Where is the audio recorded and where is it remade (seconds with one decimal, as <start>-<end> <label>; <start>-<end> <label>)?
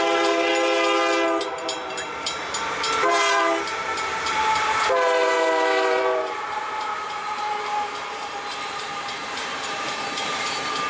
0.0-0.5 remade; 0.5-1.4 recorded; 1.4-10.9 remade